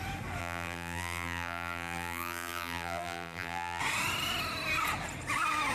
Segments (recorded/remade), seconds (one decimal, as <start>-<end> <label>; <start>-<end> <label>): 0.0-0.4 recorded; 0.4-3.8 remade; 3.8-5.7 recorded